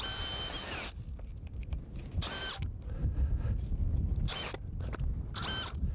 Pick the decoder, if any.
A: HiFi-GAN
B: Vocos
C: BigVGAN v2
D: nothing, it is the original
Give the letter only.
D